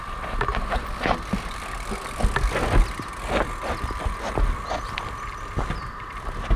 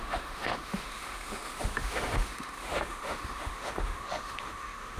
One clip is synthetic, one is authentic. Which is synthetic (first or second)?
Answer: second